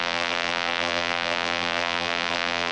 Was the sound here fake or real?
fake